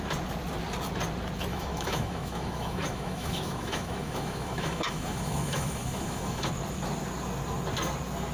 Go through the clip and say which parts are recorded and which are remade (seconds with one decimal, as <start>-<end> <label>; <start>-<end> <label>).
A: 0.0-1.5 recorded; 1.5-6.5 remade; 6.5-8.3 recorded